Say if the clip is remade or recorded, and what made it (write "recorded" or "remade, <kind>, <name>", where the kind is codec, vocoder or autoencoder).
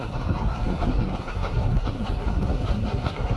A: remade, codec, SNAC